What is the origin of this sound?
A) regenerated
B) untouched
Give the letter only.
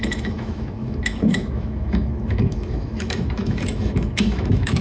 A